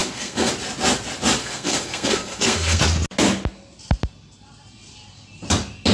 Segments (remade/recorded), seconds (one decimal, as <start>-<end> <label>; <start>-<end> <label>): 0.0-0.5 remade; 0.5-1.4 recorded; 1.4-2.8 remade; 2.8-5.9 recorded